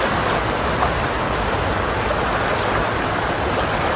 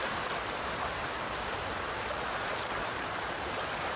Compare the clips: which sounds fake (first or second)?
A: second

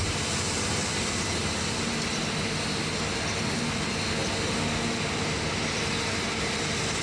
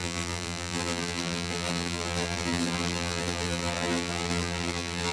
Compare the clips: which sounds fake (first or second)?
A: second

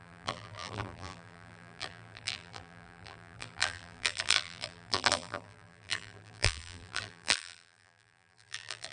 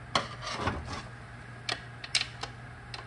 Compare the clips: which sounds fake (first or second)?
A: first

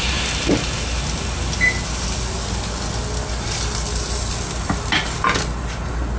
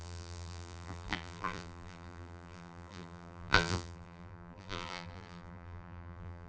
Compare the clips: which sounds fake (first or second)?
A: second